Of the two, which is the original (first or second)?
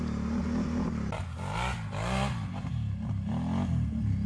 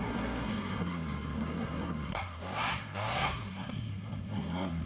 first